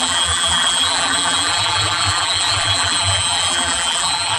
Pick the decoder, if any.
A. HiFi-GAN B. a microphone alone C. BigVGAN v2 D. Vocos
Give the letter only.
C